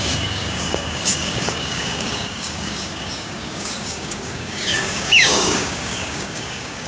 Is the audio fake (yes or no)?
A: yes